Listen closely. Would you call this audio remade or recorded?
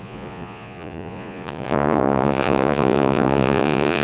remade